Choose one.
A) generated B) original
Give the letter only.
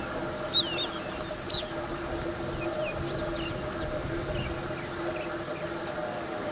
B